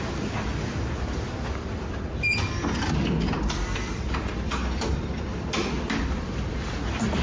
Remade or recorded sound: remade